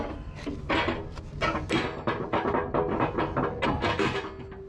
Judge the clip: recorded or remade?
recorded